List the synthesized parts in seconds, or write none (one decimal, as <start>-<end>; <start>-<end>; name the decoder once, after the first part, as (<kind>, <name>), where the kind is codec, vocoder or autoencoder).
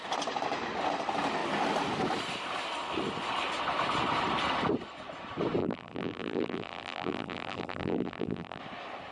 5.6-8.6 (vocoder, BigVGAN v2)